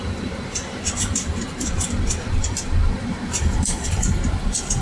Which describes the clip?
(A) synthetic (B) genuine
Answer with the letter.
A